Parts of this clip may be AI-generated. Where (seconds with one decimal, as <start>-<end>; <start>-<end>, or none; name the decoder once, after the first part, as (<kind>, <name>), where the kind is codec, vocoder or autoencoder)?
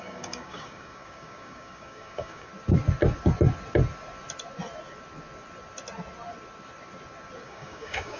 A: 0.0-2.5 (codec, DAC); 7.4-8.2